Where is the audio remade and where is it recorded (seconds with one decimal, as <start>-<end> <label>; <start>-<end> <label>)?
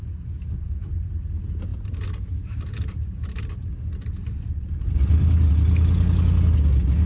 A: 0.0-1.7 recorded; 1.7-5.5 remade; 5.5-7.1 recorded